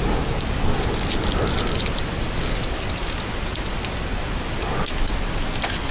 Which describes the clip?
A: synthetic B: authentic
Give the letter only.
B